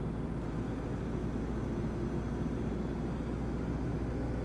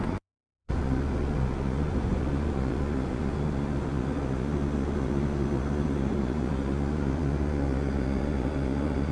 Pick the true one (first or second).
first